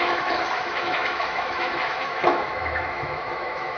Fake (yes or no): yes